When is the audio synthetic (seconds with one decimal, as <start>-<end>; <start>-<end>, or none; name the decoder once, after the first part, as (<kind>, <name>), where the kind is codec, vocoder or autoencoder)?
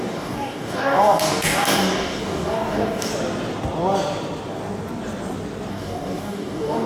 0.0-3.1 (codec, DAC); 5.7-6.9